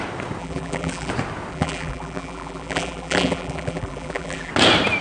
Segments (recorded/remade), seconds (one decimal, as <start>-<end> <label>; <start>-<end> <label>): 0.0-0.4 recorded; 0.4-1.1 remade; 1.1-1.5 recorded; 1.5-4.5 remade; 4.5-5.0 recorded